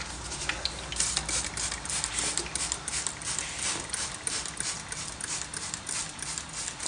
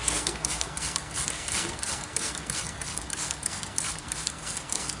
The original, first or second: first